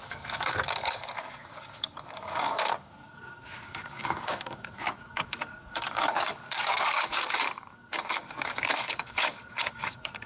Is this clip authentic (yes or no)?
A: no